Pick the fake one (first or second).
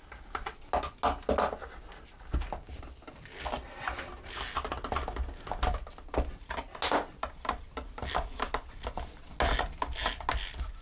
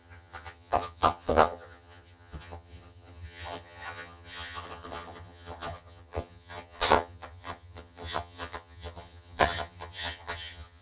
second